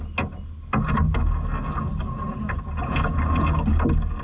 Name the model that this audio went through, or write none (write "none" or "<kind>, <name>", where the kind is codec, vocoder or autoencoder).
none